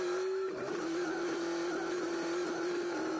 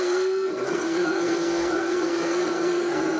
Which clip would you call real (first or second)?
first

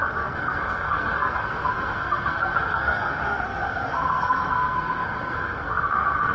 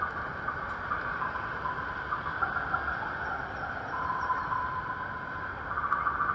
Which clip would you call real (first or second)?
second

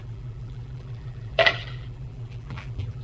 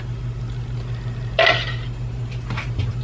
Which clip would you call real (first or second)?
second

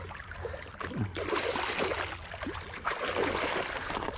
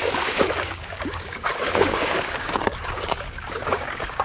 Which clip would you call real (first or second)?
first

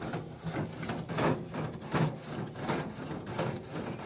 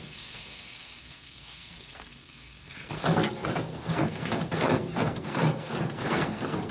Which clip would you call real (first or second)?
first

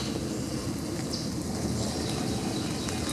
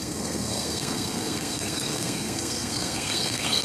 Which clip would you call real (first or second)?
first